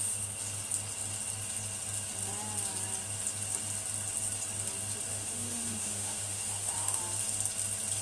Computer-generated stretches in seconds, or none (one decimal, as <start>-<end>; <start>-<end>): 5.1-7.0